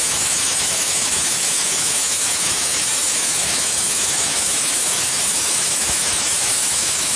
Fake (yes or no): yes